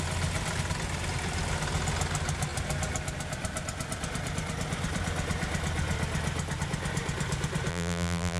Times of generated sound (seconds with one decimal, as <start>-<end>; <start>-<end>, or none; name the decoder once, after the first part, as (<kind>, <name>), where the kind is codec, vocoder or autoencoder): 7.7-8.4 (vocoder, BigVGAN v2)